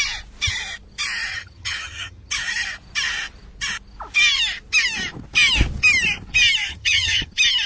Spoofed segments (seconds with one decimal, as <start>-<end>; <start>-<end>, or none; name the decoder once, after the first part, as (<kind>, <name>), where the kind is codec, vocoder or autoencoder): 1.3-2.3 (vocoder, HiFi-GAN); 6.7-7.3